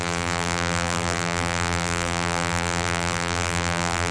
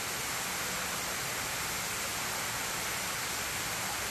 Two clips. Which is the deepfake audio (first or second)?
first